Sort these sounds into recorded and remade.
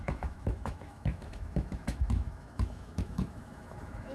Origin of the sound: remade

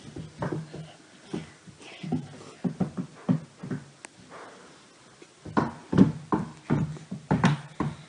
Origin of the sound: recorded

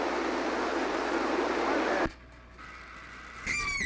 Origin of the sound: recorded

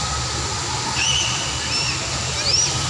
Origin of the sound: recorded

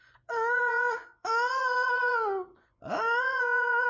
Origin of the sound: remade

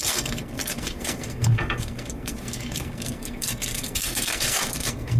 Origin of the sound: remade